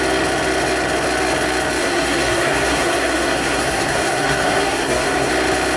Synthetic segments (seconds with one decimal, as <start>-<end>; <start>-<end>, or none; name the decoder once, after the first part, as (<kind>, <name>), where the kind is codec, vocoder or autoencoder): 1.8-5.3 (codec, SNAC)